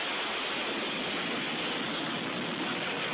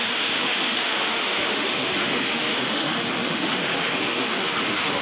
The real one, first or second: first